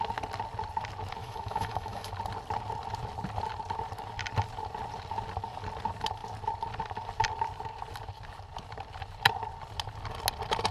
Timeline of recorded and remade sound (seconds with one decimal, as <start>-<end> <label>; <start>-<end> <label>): 0.0-1.2 recorded; 1.2-2.1 remade; 2.1-10.7 recorded